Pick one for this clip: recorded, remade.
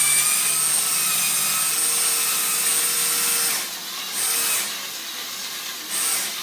recorded